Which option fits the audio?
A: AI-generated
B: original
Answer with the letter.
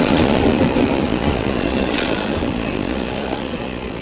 A